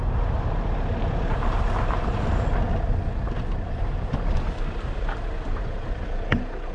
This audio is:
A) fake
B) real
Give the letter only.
B